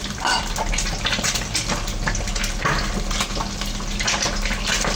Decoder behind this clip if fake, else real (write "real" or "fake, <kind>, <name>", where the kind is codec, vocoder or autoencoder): real